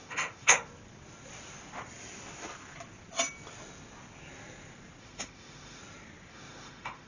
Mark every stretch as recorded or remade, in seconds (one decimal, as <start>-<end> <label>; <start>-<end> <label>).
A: 0.0-0.7 remade; 0.7-5.0 recorded; 5.0-5.8 remade; 5.8-6.3 recorded; 6.3-7.1 remade